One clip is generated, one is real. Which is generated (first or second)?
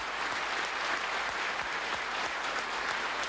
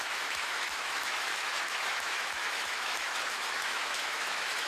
second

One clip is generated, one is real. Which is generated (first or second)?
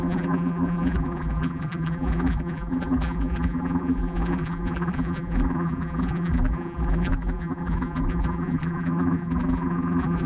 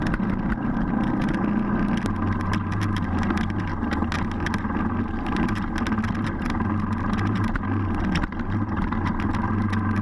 first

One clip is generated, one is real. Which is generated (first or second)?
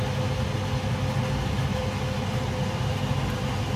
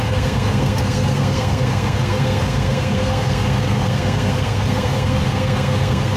second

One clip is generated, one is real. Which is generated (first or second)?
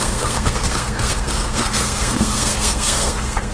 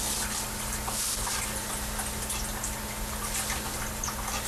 first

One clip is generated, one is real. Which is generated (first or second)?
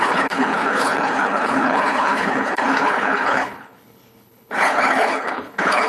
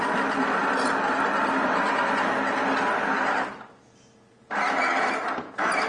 first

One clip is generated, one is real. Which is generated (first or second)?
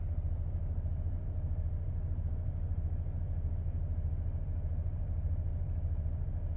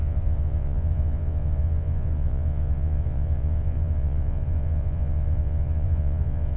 second